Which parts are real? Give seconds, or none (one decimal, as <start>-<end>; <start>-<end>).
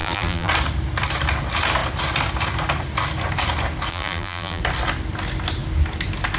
0.5-3.9; 4.6-6.4